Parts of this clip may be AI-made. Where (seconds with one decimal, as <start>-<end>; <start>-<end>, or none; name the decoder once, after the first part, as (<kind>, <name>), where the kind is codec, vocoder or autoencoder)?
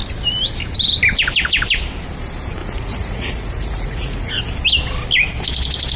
2.6-4.4 (vocoder, Vocos)